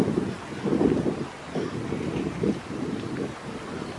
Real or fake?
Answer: real